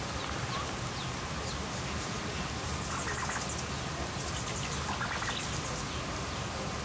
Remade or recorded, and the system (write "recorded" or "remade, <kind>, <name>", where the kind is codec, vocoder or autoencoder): recorded